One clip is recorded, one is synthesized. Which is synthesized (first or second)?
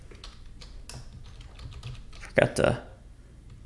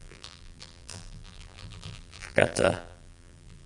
second